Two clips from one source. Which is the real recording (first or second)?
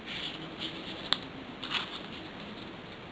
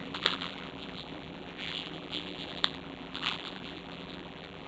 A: first